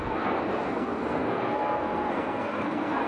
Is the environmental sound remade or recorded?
remade